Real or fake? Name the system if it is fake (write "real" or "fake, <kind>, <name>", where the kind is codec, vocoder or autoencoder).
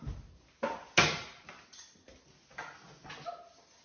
real